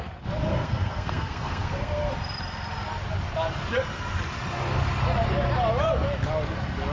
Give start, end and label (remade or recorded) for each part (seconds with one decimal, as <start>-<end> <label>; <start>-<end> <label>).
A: 0.0-0.5 recorded; 0.5-2.1 remade; 2.1-6.9 recorded